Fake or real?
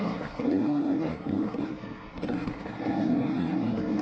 fake